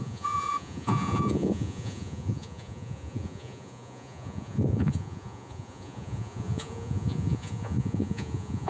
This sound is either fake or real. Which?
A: fake